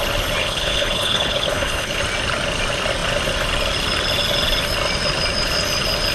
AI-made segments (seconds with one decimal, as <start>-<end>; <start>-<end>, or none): 0.4-2.0